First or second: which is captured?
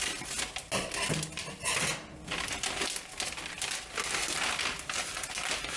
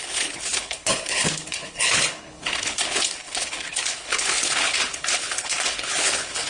first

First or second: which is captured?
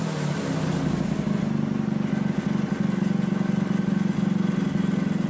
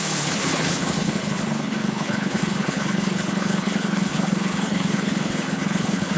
first